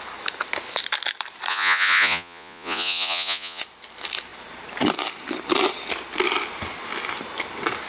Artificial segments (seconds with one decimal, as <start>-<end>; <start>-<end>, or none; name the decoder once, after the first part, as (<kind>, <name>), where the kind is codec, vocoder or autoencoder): 1.5-3.6 (vocoder, Vocos)